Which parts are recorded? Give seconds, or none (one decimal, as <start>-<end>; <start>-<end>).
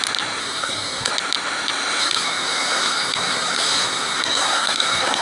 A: 0.0-0.4; 1.1-2.0